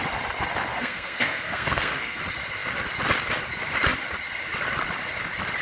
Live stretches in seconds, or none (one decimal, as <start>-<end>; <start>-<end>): 0.0-0.7; 2.2-5.6